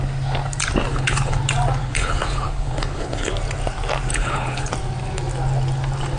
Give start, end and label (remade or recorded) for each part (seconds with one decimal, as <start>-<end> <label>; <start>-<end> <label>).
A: 0.0-0.9 recorded; 0.9-1.4 remade; 1.4-1.8 recorded; 1.8-3.3 remade; 3.3-4.1 recorded; 4.1-4.7 remade; 4.7-6.2 recorded